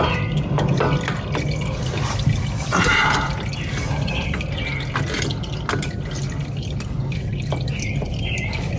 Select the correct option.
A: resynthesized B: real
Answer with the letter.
B